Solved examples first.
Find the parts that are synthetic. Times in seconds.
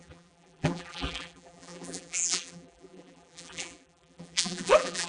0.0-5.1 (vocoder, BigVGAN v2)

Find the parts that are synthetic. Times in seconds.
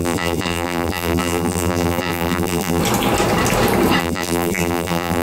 0.0-2.8 (vocoder, BigVGAN v2); 4.0-5.2